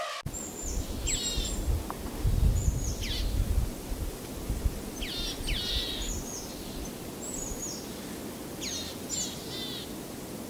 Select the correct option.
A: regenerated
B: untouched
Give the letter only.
B